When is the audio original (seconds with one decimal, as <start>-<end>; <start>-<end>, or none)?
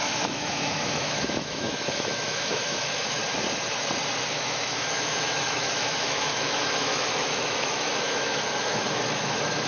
3.2-4.3